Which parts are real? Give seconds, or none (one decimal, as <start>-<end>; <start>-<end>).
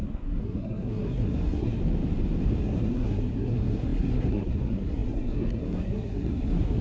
1.8-2.6